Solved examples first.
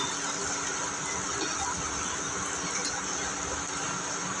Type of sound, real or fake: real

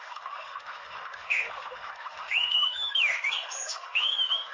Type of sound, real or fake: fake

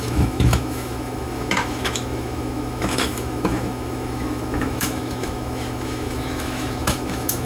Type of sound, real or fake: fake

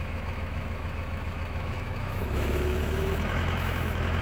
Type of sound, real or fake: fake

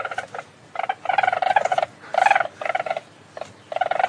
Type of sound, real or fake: real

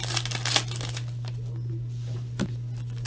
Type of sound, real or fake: real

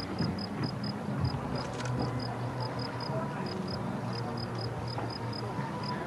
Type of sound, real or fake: real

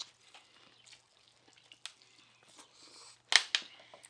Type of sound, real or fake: real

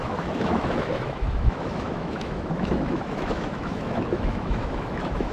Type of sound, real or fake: fake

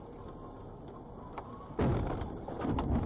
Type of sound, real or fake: real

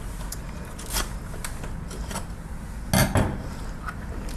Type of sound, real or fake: real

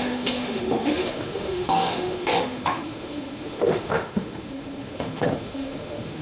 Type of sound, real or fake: fake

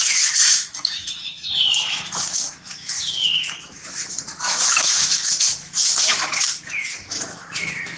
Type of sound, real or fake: fake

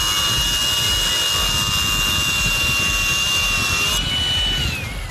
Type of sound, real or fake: real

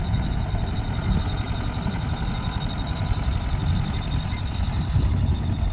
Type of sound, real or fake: real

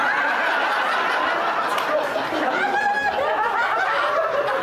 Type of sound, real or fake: real